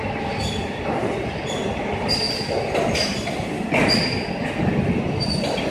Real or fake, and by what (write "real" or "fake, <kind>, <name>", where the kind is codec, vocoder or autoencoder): real